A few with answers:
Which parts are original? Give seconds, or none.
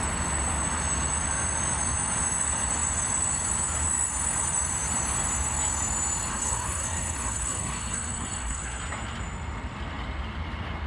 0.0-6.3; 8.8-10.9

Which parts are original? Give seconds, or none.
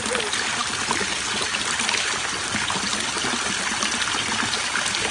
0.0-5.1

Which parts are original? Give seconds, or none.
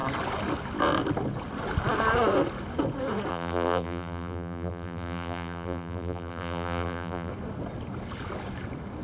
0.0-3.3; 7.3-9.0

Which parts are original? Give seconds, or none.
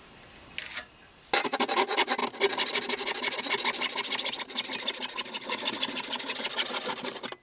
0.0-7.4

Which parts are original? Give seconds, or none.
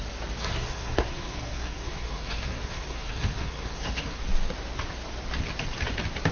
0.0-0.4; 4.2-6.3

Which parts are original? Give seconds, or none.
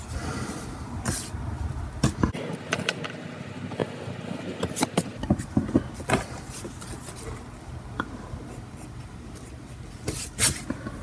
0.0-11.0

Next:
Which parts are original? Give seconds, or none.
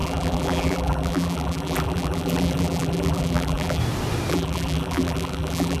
3.8-4.3